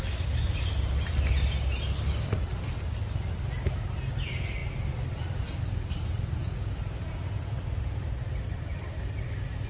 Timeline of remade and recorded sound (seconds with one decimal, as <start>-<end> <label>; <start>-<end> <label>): 0.0-9.7 recorded